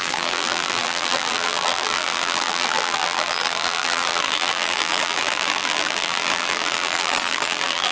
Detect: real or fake fake